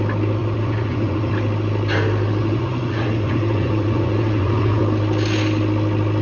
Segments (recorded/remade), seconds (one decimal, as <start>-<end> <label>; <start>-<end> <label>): 0.0-0.4 recorded; 0.4-1.3 remade; 1.3-2.4 recorded; 2.4-4.8 remade; 4.8-6.2 recorded